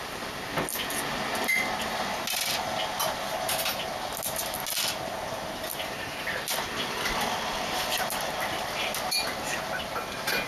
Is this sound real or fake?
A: real